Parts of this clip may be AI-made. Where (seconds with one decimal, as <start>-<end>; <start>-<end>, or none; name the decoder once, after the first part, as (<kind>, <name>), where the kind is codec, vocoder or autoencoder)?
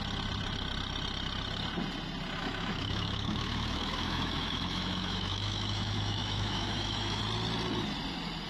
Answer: 2.4-7.2 (autoencoder, DAC-VAE)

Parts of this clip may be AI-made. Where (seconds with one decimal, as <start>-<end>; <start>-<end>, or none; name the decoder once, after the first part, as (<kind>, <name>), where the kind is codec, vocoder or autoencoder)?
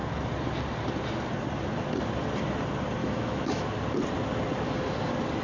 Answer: 3.0-3.7 (autoencoder, DAC-VAE)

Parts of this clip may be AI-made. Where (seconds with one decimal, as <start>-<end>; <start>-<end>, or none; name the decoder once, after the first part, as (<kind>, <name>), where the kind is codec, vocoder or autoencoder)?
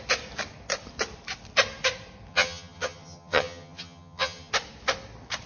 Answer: 2.3-4.5 (vocoder, HiFi-GAN)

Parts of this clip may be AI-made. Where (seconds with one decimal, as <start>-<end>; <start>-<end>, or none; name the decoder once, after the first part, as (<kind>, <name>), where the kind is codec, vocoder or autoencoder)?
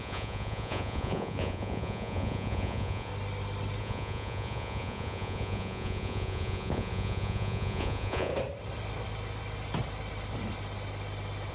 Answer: 0.0-3.1 (vocoder, Vocos); 3.8-8.3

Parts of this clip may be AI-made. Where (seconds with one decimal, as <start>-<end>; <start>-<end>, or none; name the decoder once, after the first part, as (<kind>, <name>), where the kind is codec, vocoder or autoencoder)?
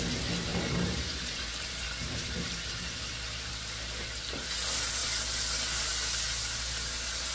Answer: 0.5-3.5 (vocoder, BigVGAN v2)